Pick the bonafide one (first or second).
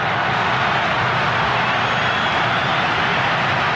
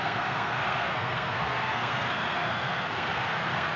first